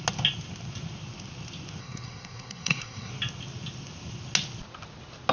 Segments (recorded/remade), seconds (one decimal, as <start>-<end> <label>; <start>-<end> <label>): 0.0-1.8 recorded; 1.8-3.1 remade; 3.1-5.3 recorded